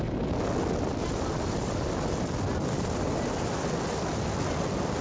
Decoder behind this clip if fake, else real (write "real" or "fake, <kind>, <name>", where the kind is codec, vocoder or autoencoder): real